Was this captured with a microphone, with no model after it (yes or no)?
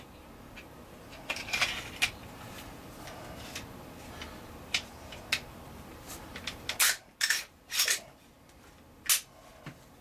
yes